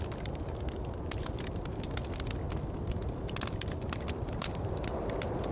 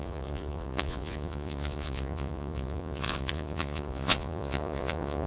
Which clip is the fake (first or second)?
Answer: second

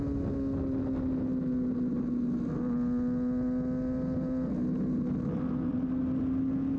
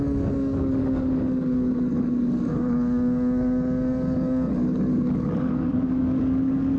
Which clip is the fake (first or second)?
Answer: second